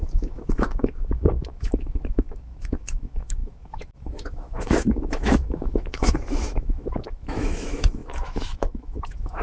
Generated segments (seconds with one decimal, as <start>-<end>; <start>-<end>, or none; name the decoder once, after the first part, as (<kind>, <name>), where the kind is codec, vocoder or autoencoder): 0.0-9.4 (autoencoder, DAC-VAE)